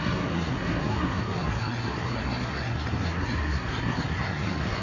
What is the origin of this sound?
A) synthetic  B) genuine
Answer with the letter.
A